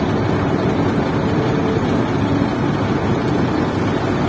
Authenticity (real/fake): real